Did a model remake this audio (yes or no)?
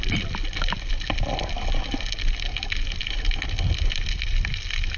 no